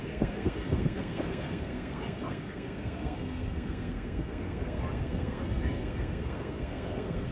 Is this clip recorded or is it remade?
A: remade